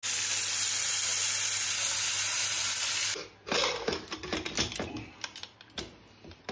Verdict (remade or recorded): recorded